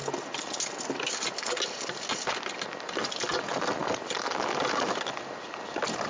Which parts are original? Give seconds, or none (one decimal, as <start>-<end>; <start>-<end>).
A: 0.0-6.1